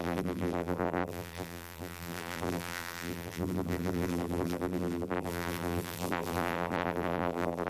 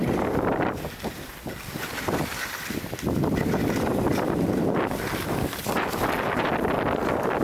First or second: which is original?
second